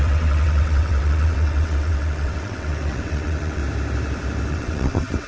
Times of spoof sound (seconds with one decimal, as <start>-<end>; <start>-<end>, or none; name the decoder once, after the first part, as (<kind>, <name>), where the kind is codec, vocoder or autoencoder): 0.0-3.6 (vocoder, WaveNeXt); 4.5-5.3